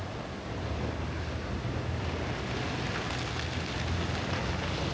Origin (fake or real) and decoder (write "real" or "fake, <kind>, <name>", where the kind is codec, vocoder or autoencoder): real